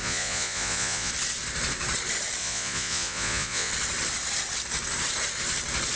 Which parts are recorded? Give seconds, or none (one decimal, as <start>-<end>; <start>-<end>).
1.1-2.4; 3.7-6.0